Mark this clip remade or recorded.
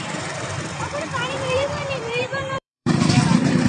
remade